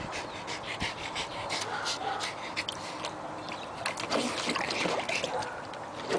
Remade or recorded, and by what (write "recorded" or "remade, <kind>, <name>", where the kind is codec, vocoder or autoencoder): recorded